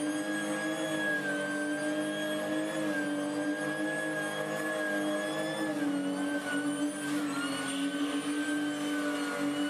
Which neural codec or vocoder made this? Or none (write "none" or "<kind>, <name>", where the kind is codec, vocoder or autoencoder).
none